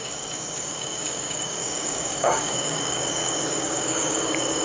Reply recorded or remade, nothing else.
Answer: remade